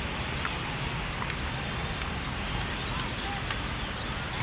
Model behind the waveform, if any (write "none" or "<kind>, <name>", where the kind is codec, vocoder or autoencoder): none